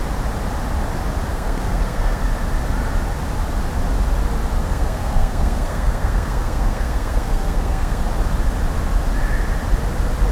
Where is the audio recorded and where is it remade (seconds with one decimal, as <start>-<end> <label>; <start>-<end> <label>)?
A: 0.0-1.3 recorded; 1.3-2.2 remade; 2.2-4.6 recorded; 4.6-8.0 remade; 8.0-10.3 recorded

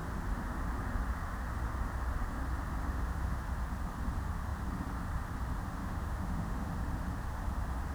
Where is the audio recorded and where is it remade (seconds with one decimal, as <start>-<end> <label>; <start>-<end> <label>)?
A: 0.0-2.8 recorded; 2.8-3.4 remade; 3.4-5.8 recorded; 5.8-6.7 remade; 6.7-7.9 recorded

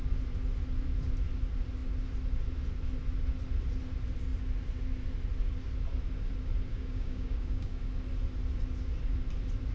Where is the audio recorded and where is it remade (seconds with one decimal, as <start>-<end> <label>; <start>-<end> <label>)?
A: 0.0-6.7 recorded; 6.7-7.8 remade; 7.8-9.7 recorded

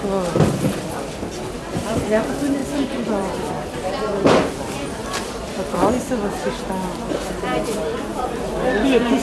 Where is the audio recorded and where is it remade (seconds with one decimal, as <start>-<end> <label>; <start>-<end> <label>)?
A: 0.0-2.6 recorded; 2.6-3.5 remade; 3.5-5.0 recorded; 5.0-5.9 remade; 5.9-8.1 recorded; 8.1-8.6 remade; 8.6-9.2 recorded

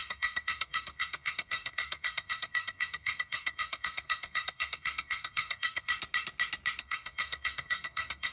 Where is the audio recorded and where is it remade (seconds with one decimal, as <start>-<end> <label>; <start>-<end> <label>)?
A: 0.0-5.9 remade; 5.9-6.8 recorded; 6.8-8.3 remade

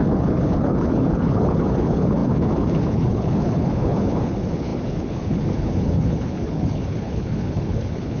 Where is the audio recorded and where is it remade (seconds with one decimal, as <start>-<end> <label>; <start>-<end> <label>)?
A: 0.0-8.2 remade